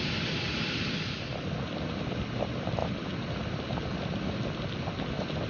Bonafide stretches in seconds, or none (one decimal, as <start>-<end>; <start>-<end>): 0.0-5.5